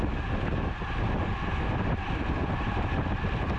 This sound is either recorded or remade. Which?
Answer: recorded